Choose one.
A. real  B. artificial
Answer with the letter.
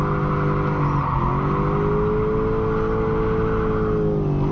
A